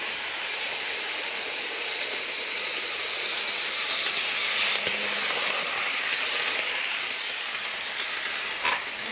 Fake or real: real